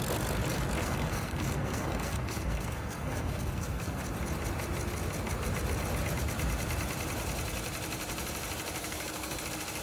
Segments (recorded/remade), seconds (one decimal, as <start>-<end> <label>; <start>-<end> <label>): 0.0-0.8 recorded; 0.8-4.0 remade; 4.0-8.8 recorded; 8.8-9.4 remade; 9.4-9.8 recorded

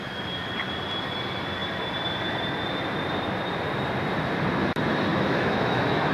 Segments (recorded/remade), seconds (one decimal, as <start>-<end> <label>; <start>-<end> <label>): 0.0-5.1 recorded; 5.1-6.1 remade

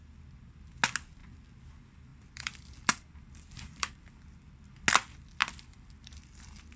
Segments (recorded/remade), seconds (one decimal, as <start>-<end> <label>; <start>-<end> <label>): 0.0-2.1 recorded; 2.1-4.0 remade; 4.0-5.4 recorded; 5.4-6.8 remade

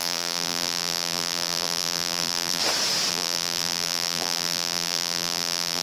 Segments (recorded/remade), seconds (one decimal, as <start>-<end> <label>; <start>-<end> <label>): 0.0-2.6 remade; 2.6-3.1 recorded; 3.1-5.8 remade

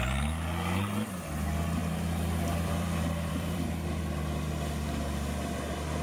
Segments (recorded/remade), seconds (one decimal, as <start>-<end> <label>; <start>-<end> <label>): 0.0-1.8 recorded; 1.8-4.0 remade; 4.0-6.0 recorded

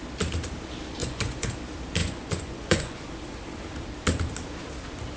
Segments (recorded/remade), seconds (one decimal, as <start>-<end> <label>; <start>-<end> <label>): 0.0-1.0 recorded; 1.0-1.5 remade; 1.5-2.0 recorded; 2.0-3.1 remade; 3.1-5.2 recorded